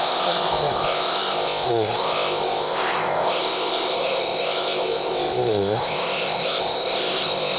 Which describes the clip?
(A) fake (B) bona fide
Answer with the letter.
A